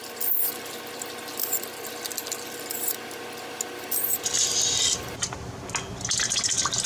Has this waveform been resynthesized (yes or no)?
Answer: no